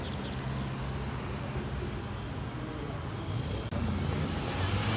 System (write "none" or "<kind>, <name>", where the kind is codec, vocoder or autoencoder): none